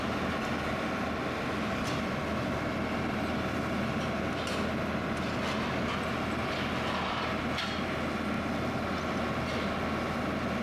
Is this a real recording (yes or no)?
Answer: yes